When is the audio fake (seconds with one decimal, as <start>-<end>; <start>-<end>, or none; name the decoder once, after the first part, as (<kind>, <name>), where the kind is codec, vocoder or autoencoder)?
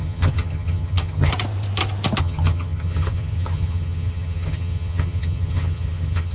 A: 0.0-1.3 (vocoder, HiFi-GAN); 2.2-6.3